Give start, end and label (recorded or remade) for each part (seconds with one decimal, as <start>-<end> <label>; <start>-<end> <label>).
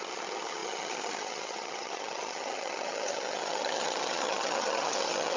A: 0.0-5.4 remade